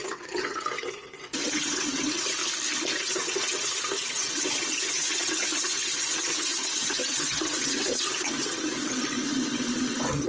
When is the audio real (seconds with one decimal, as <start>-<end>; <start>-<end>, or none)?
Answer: 2.4-3.0